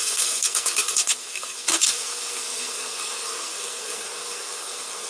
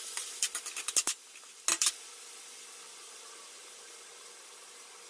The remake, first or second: first